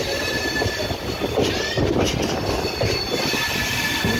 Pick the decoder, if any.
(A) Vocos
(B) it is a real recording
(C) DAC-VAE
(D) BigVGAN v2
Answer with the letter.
B